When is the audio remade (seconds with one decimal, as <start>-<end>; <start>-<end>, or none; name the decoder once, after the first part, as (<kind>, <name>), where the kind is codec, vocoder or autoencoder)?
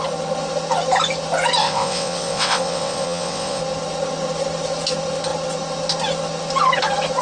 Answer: 1.6-3.6 (vocoder, WaveNeXt)